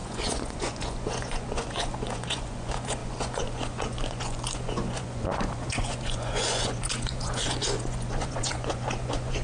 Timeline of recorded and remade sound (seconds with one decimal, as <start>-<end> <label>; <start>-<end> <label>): 0.0-9.4 remade